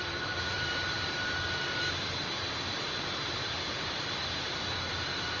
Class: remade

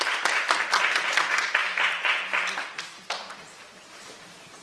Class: remade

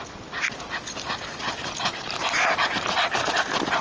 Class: recorded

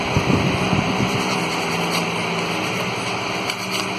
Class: remade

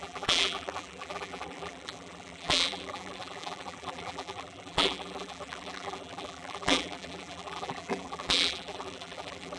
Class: remade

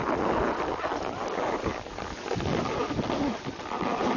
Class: recorded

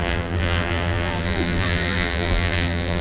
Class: remade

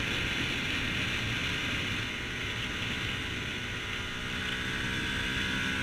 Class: recorded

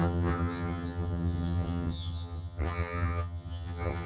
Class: remade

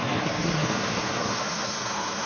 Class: remade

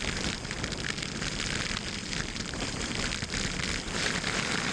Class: recorded